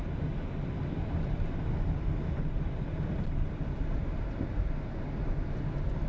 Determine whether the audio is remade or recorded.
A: recorded